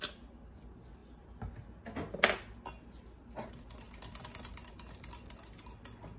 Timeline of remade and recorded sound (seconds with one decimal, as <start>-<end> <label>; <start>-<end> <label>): 0.0-6.2 recorded